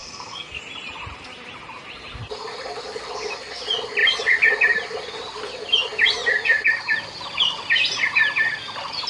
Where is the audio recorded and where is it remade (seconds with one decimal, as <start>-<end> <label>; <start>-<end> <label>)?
0.0-0.6 remade; 0.6-9.1 recorded